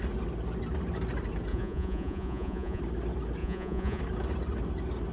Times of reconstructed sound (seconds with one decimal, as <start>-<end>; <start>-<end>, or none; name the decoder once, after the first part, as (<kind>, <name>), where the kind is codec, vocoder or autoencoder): 1.5-2.8 (vocoder, Vocos); 3.4-4.0